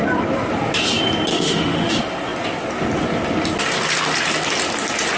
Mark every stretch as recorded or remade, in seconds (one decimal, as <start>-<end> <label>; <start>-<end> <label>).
0.0-1.3 recorded; 1.3-1.9 remade; 1.9-5.2 recorded